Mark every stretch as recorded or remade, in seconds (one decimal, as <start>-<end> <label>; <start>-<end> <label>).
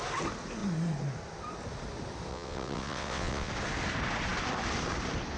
0.0-2.3 recorded; 2.3-3.5 remade; 3.5-5.4 recorded